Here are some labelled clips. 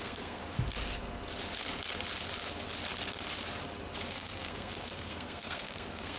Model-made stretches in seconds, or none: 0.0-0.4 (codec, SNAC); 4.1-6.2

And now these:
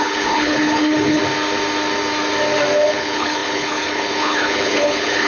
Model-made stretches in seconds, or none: 0.0-1.2 (codec, HILCodec); 2.9-5.3

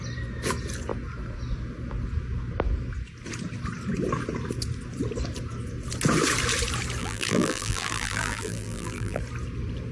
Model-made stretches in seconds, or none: 7.0-9.2 (vocoder, BigVGAN v2)

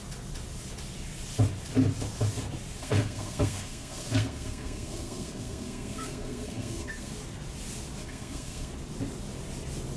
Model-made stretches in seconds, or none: 2.8-7.1 (codec, SNAC); 8.0-8.7

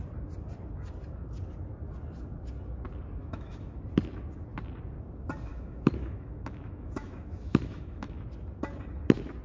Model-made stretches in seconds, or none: 3.2-3.8 (autoencoder, DAC-VAE); 5.5-8.2